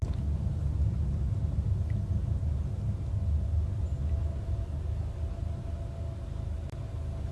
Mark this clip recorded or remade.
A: recorded